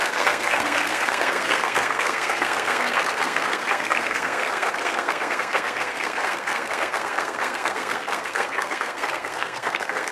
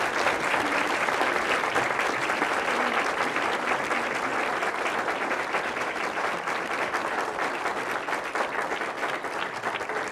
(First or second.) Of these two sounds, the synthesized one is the first